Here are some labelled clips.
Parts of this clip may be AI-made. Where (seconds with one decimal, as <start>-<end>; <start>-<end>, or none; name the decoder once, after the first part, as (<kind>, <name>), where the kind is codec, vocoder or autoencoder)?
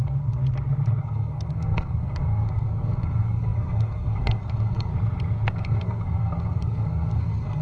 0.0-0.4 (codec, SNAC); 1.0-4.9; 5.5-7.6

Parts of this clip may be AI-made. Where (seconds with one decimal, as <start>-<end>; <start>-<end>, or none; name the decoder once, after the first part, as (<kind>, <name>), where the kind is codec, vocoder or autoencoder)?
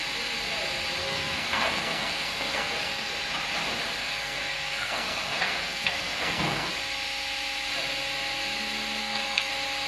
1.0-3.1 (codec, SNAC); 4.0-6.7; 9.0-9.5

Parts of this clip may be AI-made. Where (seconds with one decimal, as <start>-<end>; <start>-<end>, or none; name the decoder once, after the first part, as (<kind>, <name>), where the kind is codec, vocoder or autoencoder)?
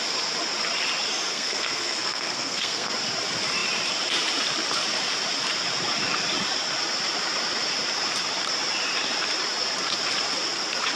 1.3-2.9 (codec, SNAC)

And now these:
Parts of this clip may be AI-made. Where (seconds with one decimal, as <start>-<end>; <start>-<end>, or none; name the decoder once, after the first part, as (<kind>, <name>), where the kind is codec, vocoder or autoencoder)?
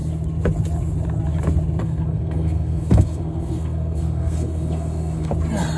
1.8-5.3 (codec, SNAC)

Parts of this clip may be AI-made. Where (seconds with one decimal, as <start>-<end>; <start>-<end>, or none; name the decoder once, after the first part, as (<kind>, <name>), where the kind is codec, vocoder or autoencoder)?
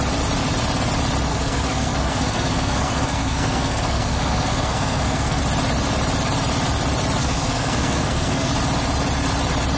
1.3-5.4 (codec, SNAC); 7.2-8.5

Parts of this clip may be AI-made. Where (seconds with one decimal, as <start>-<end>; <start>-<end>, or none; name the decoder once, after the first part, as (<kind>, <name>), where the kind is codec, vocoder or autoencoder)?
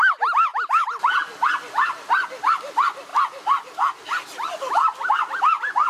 none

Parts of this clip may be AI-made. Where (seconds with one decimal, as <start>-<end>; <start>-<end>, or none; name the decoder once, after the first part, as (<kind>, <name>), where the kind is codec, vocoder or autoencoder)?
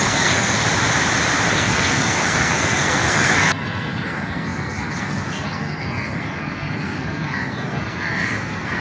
0.0-0.6 (codec, SNAC); 1.5-8.8